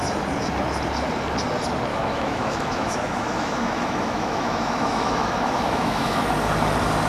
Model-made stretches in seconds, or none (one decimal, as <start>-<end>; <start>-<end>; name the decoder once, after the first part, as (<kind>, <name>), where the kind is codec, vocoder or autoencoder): 1.9-6.2 (autoencoder, DAC-VAE)